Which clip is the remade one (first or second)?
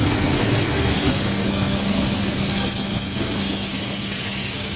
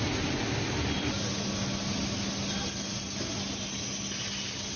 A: first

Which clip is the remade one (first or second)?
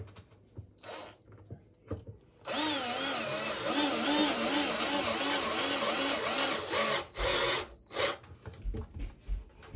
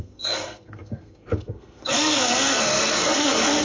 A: second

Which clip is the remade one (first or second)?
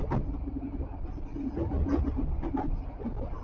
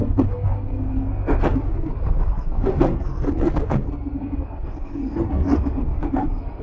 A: second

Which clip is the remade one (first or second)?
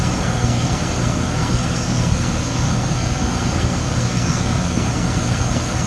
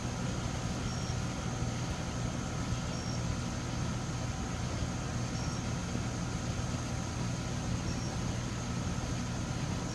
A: first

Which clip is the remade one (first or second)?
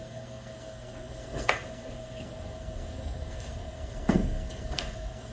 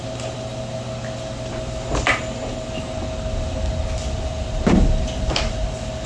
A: first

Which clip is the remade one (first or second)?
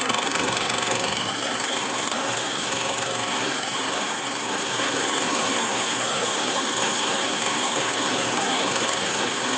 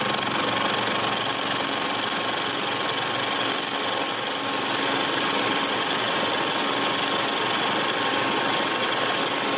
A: first